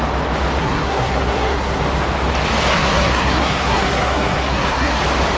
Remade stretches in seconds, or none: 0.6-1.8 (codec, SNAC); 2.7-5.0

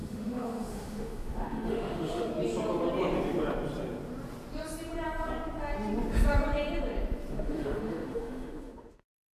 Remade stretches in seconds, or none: 0.0-2.3 (autoencoder, DAC-VAE); 7.3-9.3

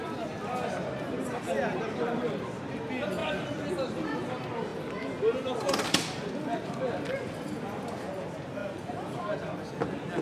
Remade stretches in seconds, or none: 4.7-6.9 (vocoder, BigVGAN v2)